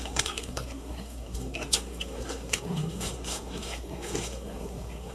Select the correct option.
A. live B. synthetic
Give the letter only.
B